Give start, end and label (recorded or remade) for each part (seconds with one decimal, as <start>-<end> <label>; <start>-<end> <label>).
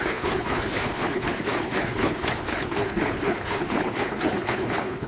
0.0-5.1 remade